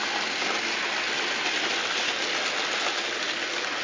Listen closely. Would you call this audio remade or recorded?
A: recorded